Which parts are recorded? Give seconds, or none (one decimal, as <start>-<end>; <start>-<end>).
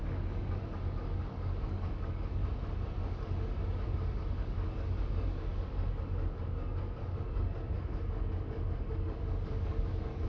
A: 2.4-3.1